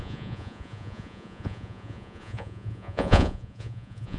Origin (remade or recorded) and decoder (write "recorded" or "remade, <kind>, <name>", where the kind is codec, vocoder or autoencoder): remade, vocoder, Vocos